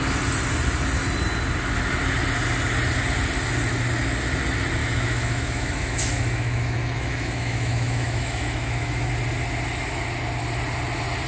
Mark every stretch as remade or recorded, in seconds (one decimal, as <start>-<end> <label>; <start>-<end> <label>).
0.0-4.8 recorded; 4.8-9.1 remade; 9.1-11.3 recorded